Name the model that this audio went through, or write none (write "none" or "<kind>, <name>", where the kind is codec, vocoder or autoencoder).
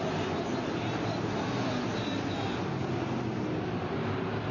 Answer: none